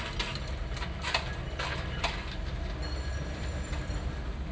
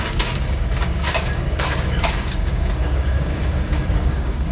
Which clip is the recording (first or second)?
first